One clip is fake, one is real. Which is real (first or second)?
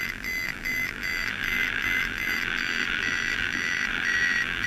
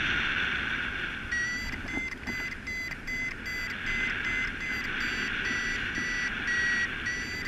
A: second